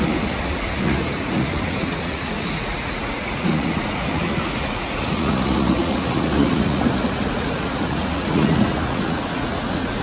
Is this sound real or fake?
fake